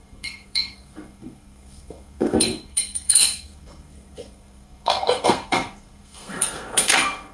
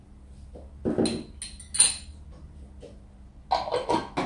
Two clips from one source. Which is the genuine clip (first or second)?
second